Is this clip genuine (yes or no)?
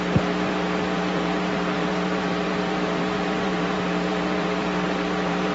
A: no